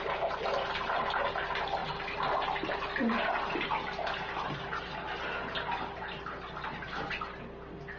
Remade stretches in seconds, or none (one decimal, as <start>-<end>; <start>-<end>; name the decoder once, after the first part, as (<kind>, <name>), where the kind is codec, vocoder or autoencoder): none